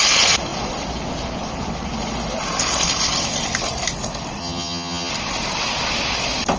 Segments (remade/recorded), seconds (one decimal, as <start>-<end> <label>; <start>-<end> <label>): 0.0-4.4 recorded; 4.4-5.1 remade; 5.1-6.6 recorded